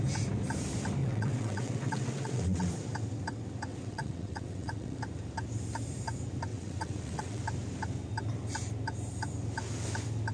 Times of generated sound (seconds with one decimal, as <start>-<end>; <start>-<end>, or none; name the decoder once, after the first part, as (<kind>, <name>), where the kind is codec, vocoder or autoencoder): 1.0-2.7 (vocoder, WaveNeXt); 3.7-5.0; 6.5-7.4